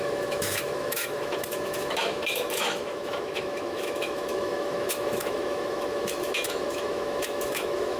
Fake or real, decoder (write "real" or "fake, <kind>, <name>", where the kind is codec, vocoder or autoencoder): fake, autoencoder, DAC-VAE